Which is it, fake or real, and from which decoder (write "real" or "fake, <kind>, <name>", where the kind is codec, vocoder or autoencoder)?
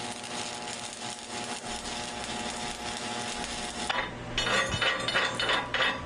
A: real